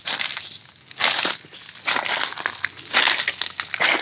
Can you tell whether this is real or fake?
real